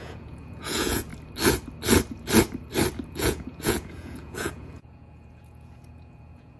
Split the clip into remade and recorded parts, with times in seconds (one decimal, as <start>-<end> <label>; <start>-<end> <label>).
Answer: 0.0-1.1 remade; 1.1-3.1 recorded; 3.1-6.6 remade